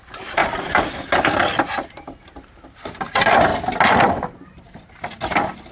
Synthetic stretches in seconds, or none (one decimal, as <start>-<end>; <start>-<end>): 0.0-0.4; 1.7-3.5